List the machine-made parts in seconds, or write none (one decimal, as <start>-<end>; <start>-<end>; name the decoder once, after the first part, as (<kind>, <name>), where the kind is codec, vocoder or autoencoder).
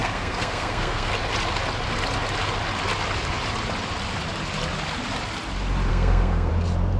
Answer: 0.0-1.1 (codec, SNAC); 5.9-6.5